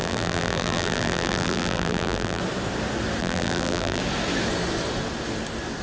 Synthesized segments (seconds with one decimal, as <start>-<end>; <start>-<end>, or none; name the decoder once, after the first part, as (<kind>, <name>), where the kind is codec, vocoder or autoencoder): 0.0-2.4 (vocoder, BigVGAN v2); 3.2-4.0